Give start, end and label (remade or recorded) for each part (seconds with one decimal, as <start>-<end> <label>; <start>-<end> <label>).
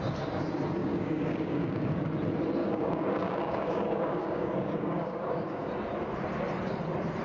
0.0-0.8 recorded; 0.8-1.9 remade; 1.9-2.6 recorded; 2.6-5.7 remade; 5.7-7.2 recorded